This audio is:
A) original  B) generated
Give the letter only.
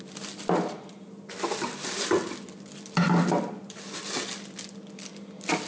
A